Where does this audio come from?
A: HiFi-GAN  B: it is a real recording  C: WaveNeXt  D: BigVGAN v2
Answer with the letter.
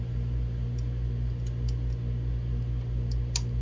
B